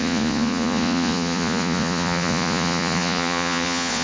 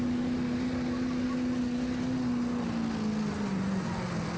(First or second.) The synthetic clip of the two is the first